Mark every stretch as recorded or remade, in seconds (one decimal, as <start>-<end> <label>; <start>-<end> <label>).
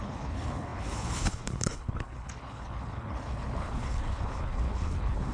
0.0-5.3 remade